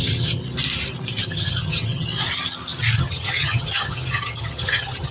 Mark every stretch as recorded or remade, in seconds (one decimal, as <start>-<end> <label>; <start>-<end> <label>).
0.0-0.4 remade; 0.4-1.2 recorded; 1.2-2.1 remade; 2.1-3.0 recorded; 3.0-5.1 remade